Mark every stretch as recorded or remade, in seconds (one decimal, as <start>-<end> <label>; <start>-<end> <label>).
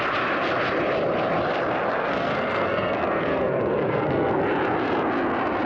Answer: 0.0-2.0 recorded; 2.0-4.4 remade; 4.4-5.7 recorded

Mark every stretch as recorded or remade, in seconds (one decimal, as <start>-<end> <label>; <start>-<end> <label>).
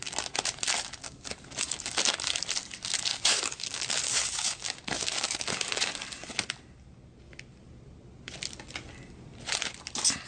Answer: 0.0-1.0 recorded; 1.0-2.5 remade; 2.5-3.1 recorded; 3.1-6.0 remade; 6.0-10.3 recorded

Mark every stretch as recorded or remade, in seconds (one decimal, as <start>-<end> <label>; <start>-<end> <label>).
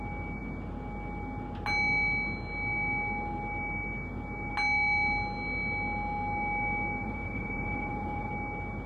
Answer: 0.0-7.0 recorded; 7.0-8.3 remade; 8.3-8.9 recorded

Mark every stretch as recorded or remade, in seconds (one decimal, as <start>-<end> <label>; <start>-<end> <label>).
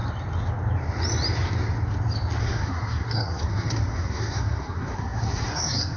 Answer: 0.0-2.4 recorded; 2.4-6.0 remade